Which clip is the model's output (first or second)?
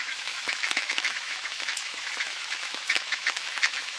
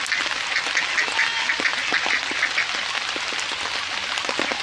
first